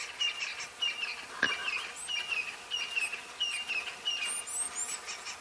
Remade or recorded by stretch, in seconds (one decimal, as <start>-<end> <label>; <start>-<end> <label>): 0.0-5.4 recorded